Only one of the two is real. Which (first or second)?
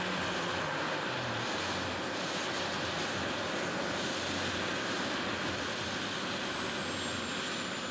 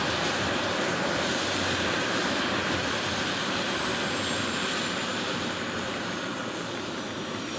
first